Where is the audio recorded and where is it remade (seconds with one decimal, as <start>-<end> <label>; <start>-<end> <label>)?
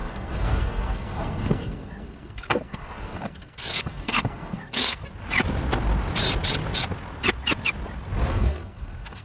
0.0-5.0 remade; 5.0-8.3 recorded; 8.3-9.2 remade